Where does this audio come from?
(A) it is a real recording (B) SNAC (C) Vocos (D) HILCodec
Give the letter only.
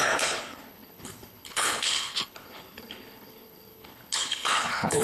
D